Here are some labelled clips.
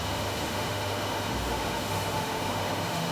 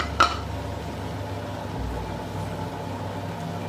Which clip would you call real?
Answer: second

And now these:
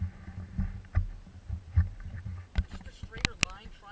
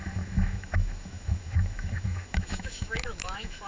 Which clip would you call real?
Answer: first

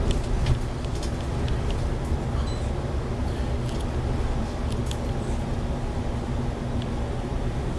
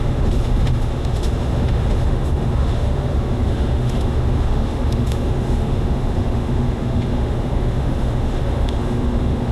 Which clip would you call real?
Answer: first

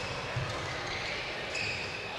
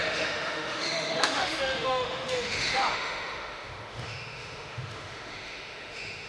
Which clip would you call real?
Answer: first